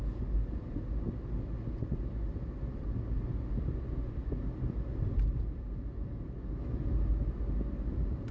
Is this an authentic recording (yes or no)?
yes